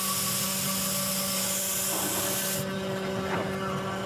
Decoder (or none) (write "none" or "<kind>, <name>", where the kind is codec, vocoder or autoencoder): none